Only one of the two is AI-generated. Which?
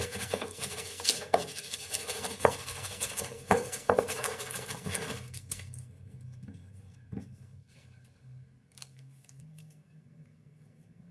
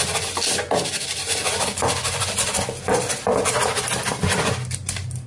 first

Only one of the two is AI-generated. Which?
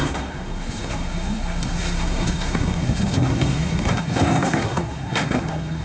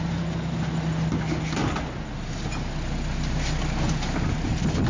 first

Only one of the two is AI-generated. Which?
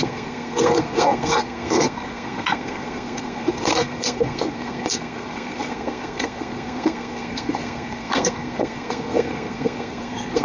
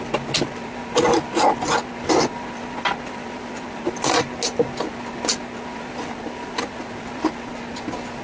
first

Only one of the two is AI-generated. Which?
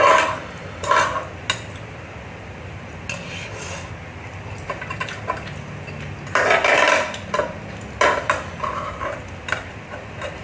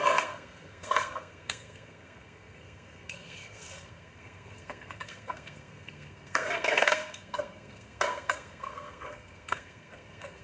second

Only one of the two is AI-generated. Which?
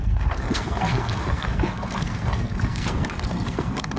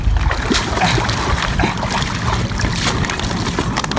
first